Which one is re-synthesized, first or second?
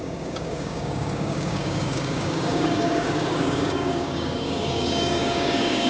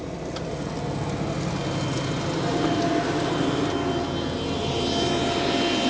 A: first